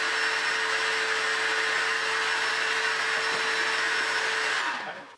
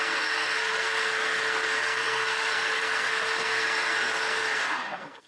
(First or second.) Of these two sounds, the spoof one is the second